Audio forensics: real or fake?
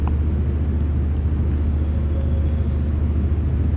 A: real